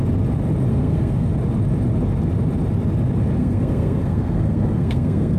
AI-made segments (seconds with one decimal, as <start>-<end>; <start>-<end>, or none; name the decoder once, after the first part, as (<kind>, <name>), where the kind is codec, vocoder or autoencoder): 0.7-1.3 (codec, SNAC); 3.4-5.4